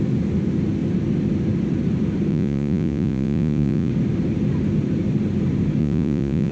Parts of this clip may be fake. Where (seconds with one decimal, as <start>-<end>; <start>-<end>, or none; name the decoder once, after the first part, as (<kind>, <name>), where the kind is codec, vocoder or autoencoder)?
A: 2.3-3.9 (vocoder, Vocos); 5.8-6.5